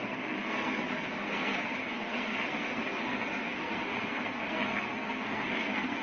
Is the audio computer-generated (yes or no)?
yes